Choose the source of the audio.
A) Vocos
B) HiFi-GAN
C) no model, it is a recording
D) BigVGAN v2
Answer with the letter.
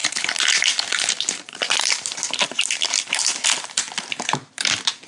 D